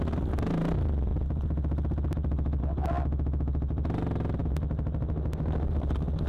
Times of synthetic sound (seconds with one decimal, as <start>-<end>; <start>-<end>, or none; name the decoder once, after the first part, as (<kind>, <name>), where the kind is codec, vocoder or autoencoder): none

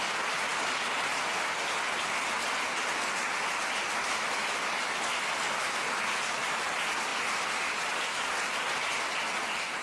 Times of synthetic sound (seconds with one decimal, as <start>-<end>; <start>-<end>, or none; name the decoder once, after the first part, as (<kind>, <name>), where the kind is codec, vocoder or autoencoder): 7.1-9.0 (vocoder, BigVGAN v2)

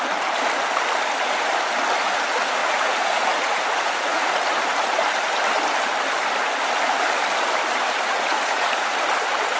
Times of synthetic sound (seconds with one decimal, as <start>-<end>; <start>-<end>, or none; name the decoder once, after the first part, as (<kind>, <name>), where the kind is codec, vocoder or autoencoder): 2.6-4.3 (vocoder, Vocos); 8.1-9.0